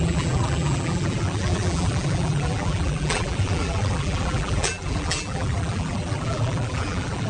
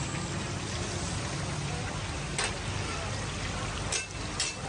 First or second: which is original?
second